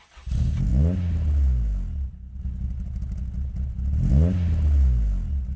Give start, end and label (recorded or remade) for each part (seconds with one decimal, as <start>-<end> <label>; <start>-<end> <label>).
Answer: 0.0-5.6 recorded